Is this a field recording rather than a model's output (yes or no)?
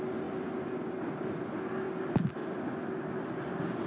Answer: yes